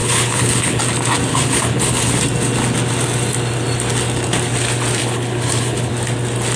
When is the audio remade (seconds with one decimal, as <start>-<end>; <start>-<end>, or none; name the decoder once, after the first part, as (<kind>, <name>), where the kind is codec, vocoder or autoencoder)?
0.0-0.8 (codec, HILCodec); 1.3-2.2; 5.0-5.9